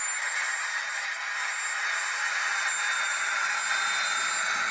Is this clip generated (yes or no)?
no